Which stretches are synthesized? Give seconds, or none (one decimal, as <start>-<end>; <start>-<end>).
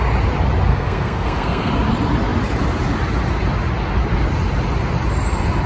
0.7-1.7